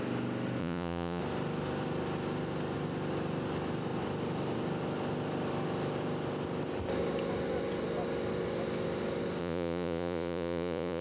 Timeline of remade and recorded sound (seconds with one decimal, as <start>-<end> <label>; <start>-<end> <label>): 0.0-0.6 recorded; 0.6-1.2 remade; 1.2-9.4 recorded; 9.4-11.0 remade